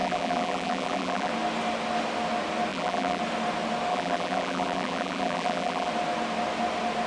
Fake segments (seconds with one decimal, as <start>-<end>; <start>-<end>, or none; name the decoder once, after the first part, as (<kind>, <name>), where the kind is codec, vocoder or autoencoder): 0.0-1.3 (vocoder, BigVGAN v2); 2.7-3.2; 3.9-5.9

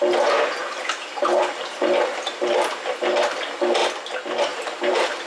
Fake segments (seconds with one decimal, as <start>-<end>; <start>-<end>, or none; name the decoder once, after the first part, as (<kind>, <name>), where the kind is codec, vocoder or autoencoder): 0.0-3.8 (vocoder, BigVGAN v2); 4.4-5.3

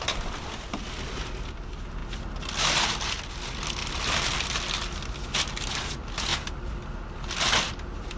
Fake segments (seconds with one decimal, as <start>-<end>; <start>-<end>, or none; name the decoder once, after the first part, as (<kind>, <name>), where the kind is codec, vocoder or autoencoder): none